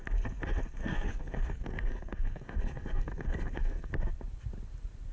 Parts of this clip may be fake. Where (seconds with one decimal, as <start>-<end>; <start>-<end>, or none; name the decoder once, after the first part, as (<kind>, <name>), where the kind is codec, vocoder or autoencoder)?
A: 0.8-3.9 (codec, SNAC)

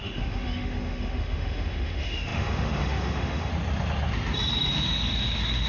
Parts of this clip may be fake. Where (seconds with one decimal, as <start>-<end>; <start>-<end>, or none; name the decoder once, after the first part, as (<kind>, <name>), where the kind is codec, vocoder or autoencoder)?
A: 0.0-3.5 (autoencoder, DAC-VAE); 4.7-5.7

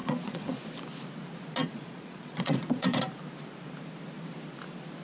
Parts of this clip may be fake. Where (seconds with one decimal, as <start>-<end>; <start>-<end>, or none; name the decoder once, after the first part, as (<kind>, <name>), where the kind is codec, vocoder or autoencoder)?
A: 0.0-0.6 (vocoder, Vocos); 1.6-3.0